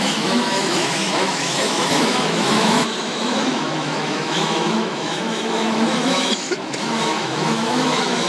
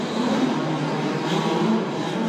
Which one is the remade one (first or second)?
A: first